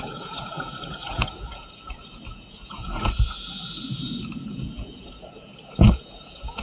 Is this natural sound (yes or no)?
no